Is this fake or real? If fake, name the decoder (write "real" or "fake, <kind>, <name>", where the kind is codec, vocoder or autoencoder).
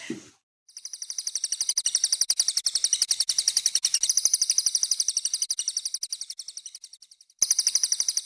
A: real